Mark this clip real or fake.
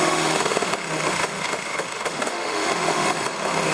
fake